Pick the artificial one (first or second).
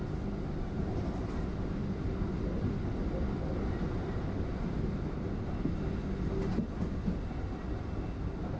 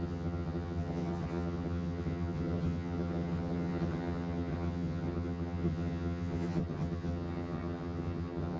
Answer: second